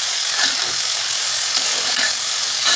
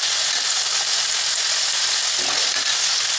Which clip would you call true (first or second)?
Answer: second